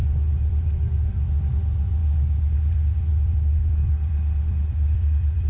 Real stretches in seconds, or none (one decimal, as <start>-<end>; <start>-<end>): 2.0-2.7